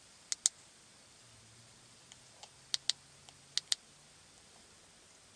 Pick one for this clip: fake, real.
real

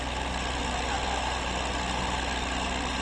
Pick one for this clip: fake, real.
real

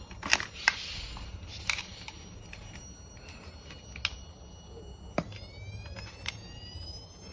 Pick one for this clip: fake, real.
real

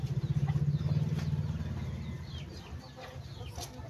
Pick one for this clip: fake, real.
real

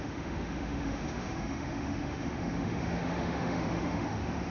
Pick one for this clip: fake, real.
fake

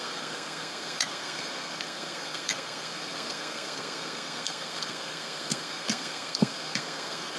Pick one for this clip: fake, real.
fake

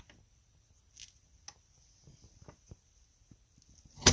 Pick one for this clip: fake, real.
real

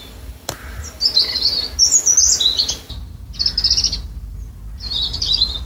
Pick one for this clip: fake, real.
real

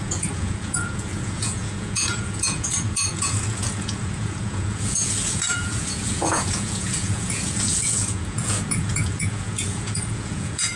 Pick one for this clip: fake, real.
fake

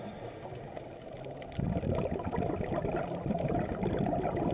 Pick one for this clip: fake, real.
real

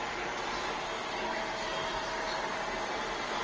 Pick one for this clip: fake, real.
real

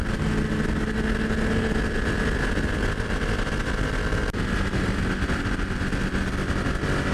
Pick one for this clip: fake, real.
real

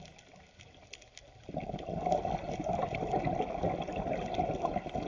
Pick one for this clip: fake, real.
real